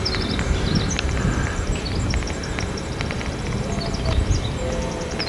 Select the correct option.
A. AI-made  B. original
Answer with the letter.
B